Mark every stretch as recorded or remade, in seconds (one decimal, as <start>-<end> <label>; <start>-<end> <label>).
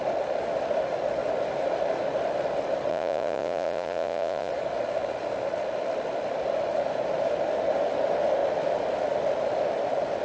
0.0-2.9 recorded; 2.9-4.5 remade; 4.5-10.2 recorded